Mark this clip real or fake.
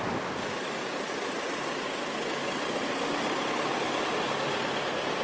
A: real